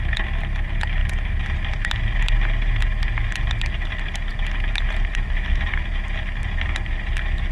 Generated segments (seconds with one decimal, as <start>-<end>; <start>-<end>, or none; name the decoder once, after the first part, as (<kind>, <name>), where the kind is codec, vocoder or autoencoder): none